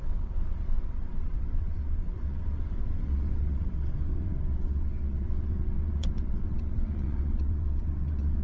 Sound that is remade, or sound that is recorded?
remade